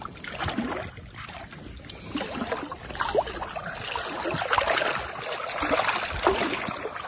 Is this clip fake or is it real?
real